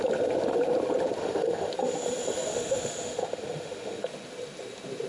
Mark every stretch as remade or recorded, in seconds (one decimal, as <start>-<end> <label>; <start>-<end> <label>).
0.0-1.2 recorded; 1.2-1.7 remade; 1.7-2.5 recorded; 2.5-4.0 remade; 4.0-5.1 recorded